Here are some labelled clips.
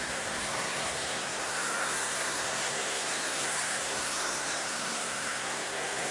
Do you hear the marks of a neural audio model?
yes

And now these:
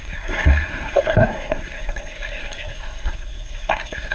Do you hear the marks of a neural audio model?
yes